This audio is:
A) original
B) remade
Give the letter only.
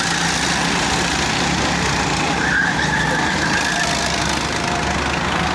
A